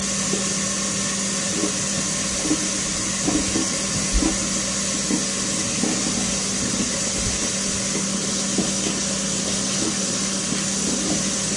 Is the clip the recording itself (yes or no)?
yes